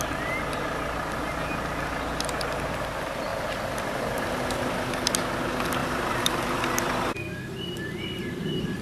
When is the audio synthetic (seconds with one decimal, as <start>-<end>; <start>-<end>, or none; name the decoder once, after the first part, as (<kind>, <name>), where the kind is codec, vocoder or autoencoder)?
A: 3.3-4.4 (vocoder, BigVGAN v2); 5.8-6.4